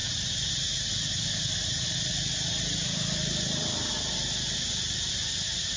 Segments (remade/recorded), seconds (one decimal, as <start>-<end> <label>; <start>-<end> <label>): 0.0-5.8 recorded

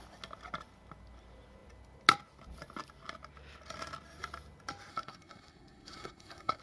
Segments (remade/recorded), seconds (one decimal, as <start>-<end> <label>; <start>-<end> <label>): 0.0-4.9 recorded; 4.9-6.6 remade